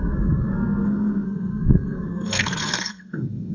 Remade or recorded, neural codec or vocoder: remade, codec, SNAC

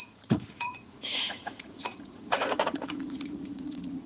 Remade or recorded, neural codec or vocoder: remade, vocoder, Vocos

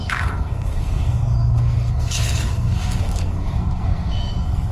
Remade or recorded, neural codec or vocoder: remade, codec, SNAC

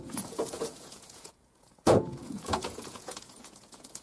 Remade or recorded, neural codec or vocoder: remade, vocoder, Vocos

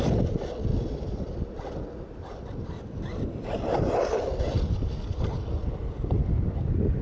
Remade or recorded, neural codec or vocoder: recorded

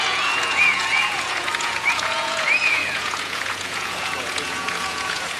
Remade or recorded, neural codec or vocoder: remade, vocoder, Vocos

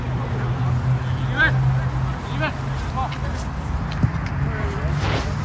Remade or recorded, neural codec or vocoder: recorded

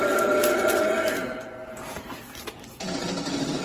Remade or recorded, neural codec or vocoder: remade, vocoder, BigVGAN v2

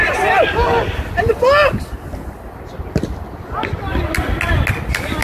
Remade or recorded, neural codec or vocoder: recorded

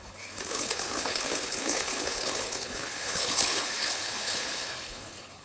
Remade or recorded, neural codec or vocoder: remade, codec, HILCodec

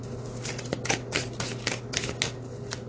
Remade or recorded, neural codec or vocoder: recorded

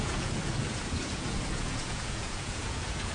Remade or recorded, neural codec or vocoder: remade, vocoder, Vocos